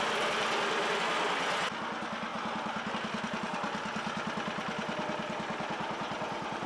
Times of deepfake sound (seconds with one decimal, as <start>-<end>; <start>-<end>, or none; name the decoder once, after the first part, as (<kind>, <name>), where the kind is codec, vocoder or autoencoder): none